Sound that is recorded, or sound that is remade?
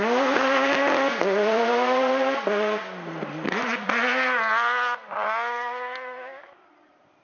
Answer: remade